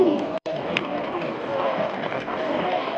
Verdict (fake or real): fake